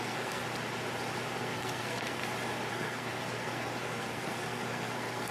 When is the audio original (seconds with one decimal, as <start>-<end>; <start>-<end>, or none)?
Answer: 0.4-1.4; 2.2-2.7